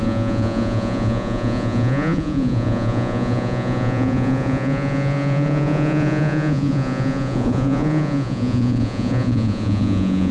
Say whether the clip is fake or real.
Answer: fake